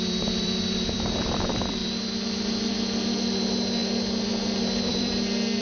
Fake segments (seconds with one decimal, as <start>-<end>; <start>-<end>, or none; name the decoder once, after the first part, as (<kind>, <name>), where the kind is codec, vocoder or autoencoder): 0.0-3.8 (vocoder, BigVGAN v2); 4.9-5.6